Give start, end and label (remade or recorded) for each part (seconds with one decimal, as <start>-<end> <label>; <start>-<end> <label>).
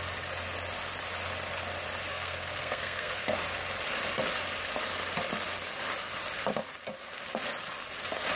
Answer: 0.0-2.1 recorded; 2.1-3.3 remade; 3.3-8.4 recorded